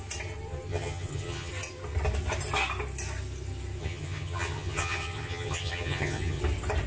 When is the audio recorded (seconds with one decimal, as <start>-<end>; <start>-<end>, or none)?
0.0-0.7; 1.5-3.8; 6.4-6.9